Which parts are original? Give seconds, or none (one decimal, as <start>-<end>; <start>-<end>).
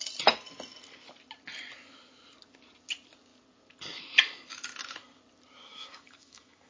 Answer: 0.0-5.6